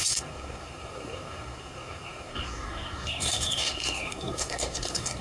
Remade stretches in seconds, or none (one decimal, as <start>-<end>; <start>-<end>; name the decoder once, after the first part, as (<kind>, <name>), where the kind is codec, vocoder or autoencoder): 0.0-5.2 (codec, SNAC)